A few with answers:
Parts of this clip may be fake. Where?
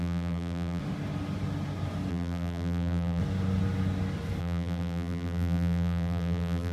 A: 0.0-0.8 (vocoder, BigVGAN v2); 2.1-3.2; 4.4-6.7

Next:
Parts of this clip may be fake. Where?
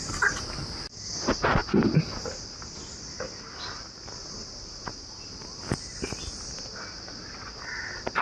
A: none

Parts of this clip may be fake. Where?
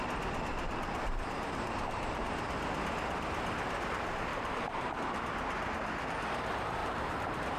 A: 0.5-2.2 (vocoder, BigVGAN v2); 4.3-5.0; 6.8-7.6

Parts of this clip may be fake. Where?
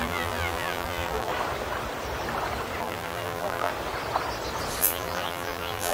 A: 0.0-1.3 (vocoder, BigVGAN v2); 2.8-3.7; 4.8-5.9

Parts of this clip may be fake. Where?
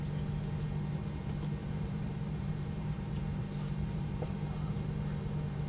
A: 1.6-5.0 (vocoder, BigVGAN v2)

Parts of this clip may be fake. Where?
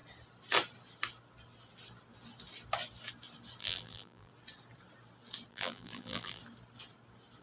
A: 3.6-4.3 (vocoder, BigVGAN v2); 5.5-6.4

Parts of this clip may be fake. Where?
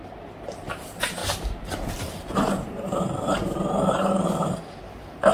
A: 0.0-5.3 (vocoder, BigVGAN v2)